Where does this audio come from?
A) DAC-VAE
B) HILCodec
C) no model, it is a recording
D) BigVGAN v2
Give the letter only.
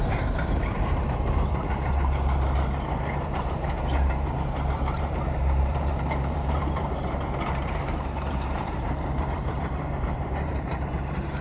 D